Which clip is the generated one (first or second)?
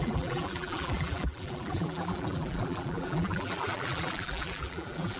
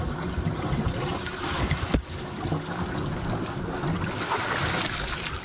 first